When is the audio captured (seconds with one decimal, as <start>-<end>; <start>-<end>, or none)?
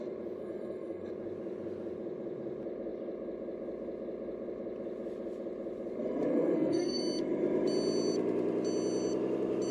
0.0-0.4; 1.1-6.3; 7.0-9.7